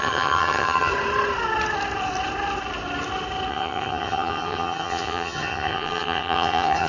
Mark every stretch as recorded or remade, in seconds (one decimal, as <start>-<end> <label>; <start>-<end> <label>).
0.0-0.9 remade; 0.9-3.5 recorded; 3.5-6.9 remade